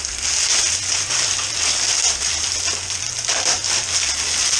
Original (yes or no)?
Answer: yes